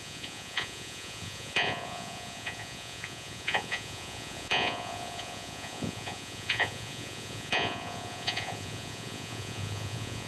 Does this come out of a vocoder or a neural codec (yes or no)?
yes